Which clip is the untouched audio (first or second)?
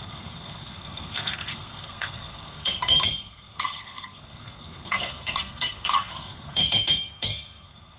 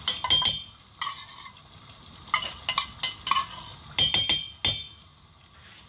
second